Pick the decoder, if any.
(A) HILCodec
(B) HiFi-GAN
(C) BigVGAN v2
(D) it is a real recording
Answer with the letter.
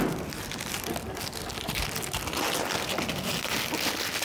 D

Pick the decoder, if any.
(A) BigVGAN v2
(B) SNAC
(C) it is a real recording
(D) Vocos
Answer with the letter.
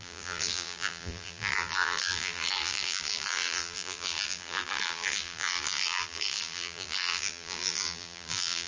A